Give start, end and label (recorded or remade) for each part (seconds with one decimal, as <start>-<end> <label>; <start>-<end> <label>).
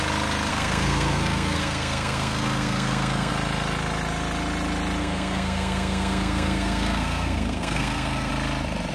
0.0-0.5 recorded; 0.5-3.3 remade; 3.3-5.0 recorded; 5.0-8.3 remade; 8.3-8.9 recorded